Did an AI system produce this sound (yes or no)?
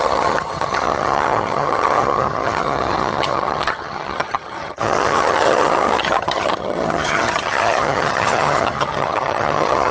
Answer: yes